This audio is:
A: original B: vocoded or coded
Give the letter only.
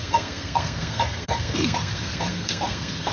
B